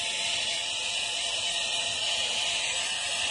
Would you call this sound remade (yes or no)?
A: no